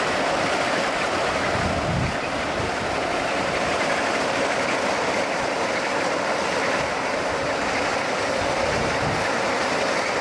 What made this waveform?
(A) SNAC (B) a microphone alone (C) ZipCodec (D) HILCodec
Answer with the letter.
B